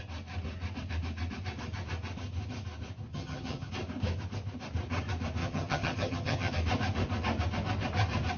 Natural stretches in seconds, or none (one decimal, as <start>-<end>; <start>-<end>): 0.0-3.1; 3.7-5.4; 6.5-8.4

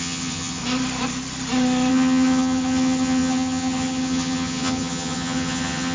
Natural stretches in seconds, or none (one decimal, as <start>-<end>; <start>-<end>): 0.6-1.9

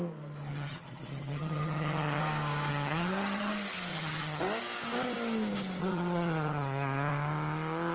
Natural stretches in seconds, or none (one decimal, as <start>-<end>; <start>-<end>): 0.0-0.5; 2.2-2.7; 3.5-3.9; 4.4-5.8; 7.1-7.9

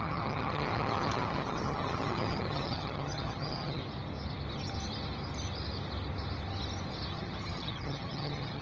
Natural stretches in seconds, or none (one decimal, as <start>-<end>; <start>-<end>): 3.8-7.1